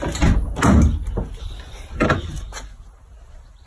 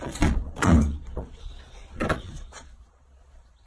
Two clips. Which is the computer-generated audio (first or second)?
second